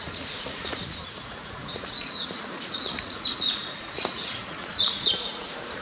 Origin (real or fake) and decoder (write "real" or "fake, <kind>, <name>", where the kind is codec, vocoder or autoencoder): fake, vocoder, Vocos